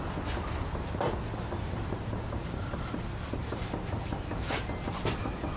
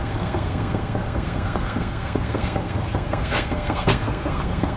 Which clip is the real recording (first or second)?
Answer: first